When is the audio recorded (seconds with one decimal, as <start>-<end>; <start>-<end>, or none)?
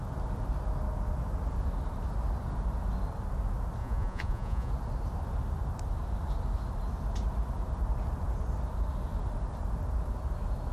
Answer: 0.0-3.8; 4.7-10.7